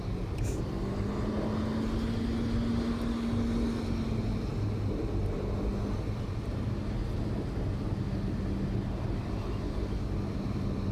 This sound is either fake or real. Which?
real